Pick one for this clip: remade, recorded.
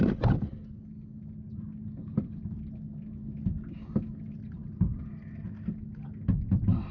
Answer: recorded